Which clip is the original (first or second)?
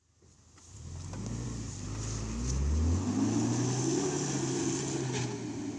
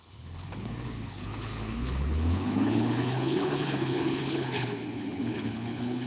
first